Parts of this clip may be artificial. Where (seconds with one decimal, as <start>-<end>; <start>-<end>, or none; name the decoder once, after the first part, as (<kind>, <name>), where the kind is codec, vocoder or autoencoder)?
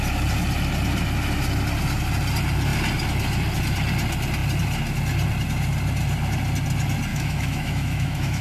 7.1-8.4 (autoencoder, DAC-VAE)